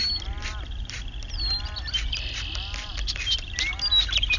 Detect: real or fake real